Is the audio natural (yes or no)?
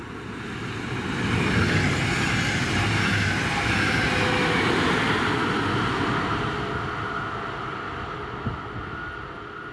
yes